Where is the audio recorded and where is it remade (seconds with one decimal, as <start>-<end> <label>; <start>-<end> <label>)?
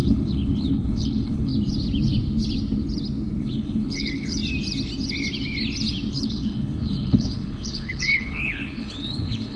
0.0-1.5 remade; 1.5-3.4 recorded; 3.4-4.4 remade; 4.4-6.1 recorded; 6.1-9.6 remade